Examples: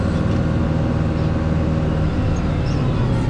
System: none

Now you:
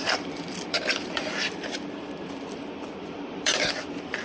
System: vocoder, BigVGAN v2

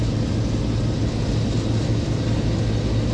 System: none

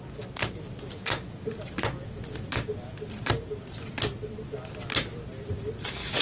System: none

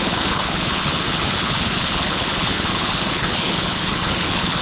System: codec, HILCodec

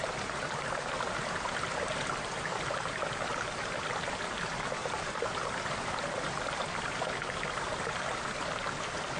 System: none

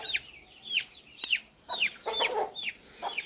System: none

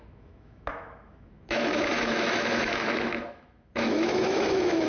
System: autoencoder, DAC-VAE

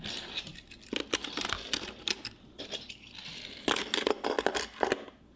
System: none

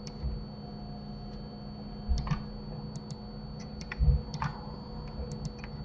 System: none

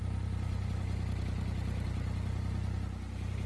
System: none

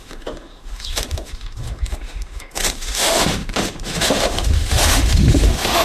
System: autoencoder, DAC-VAE